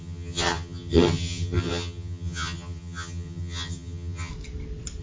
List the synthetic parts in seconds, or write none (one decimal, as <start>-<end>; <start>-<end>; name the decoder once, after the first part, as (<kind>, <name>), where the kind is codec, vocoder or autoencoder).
0.0-4.3 (vocoder, HiFi-GAN)